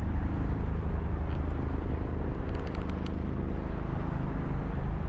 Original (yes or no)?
yes